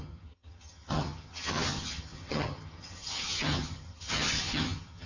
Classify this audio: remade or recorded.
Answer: remade